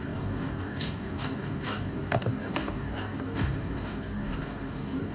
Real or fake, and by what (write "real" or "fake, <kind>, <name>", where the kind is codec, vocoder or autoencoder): fake, codec, DAC